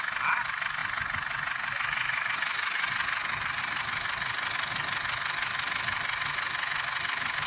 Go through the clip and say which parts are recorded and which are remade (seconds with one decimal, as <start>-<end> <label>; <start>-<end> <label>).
0.0-7.5 recorded